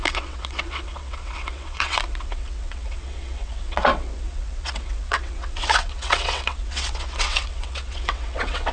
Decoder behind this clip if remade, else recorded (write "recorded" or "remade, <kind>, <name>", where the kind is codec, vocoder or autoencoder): remade, vocoder, WaveNeXt